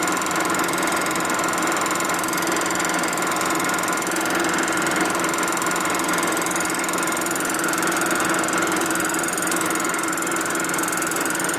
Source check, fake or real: real